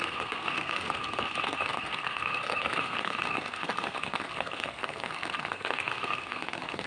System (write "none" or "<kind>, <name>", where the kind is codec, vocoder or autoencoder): codec, SNAC